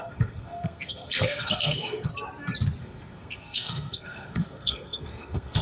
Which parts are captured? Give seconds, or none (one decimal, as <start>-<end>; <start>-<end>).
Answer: 2.1-2.8